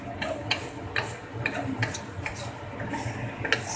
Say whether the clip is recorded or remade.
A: recorded